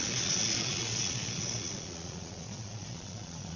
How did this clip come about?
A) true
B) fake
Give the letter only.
B